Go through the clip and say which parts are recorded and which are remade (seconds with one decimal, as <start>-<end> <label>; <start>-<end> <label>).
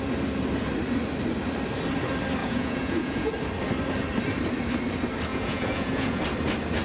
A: 0.0-2.4 recorded; 2.4-3.3 remade; 3.3-5.3 recorded; 5.3-6.2 remade; 6.2-6.8 recorded